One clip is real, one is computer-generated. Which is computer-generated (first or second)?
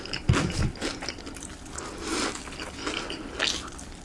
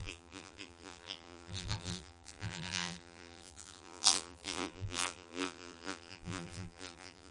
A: second